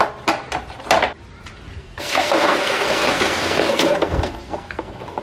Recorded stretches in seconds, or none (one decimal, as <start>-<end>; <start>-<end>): 0.0-1.8